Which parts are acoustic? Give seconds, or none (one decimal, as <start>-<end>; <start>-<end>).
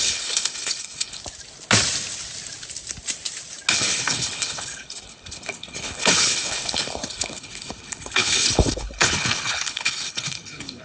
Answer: 1.2-3.7